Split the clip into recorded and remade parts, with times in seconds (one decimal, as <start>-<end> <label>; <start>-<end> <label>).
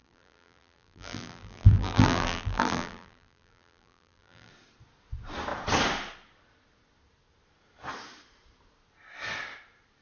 0.0-4.5 remade; 4.5-10.0 recorded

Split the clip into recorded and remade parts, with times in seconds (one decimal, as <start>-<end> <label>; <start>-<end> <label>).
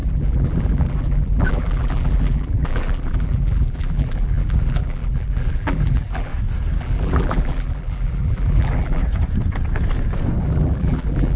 0.0-6.3 remade; 6.3-6.8 recorded; 6.8-9.0 remade; 9.0-10.4 recorded; 10.4-11.4 remade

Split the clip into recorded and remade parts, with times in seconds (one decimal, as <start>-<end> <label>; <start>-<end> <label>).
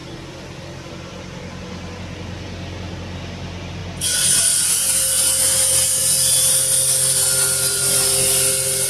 0.0-0.9 remade; 0.9-6.0 recorded; 6.0-6.6 remade; 6.6-8.9 recorded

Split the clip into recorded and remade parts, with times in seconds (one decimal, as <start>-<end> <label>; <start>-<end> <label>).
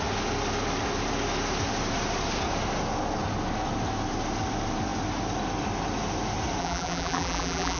0.0-6.6 recorded; 6.6-7.8 remade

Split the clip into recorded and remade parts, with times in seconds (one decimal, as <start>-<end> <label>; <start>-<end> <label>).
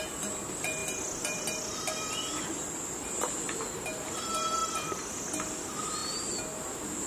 0.0-7.1 recorded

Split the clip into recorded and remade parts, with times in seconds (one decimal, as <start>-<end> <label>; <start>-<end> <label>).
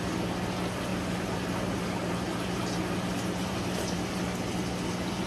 0.0-0.9 recorded; 0.9-4.1 remade; 4.1-5.3 recorded